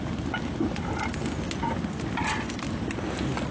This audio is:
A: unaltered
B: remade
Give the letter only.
A